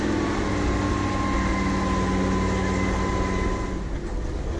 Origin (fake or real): real